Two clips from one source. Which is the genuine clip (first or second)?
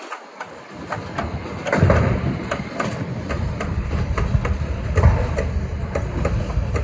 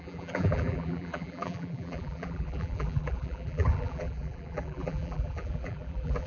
first